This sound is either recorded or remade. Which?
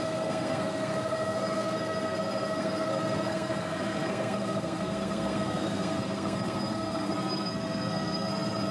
remade